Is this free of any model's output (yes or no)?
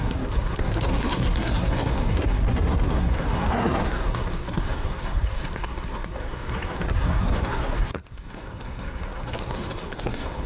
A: no